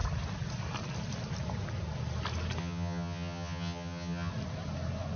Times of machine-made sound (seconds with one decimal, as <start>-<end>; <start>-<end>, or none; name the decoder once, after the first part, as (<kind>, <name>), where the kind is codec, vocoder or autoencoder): 2.6-4.3 (vocoder, HiFi-GAN)

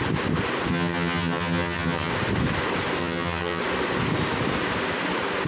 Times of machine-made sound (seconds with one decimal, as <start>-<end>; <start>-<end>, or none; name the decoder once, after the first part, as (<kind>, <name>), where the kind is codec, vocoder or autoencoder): 0.7-2.1 (vocoder, HiFi-GAN); 3.0-3.6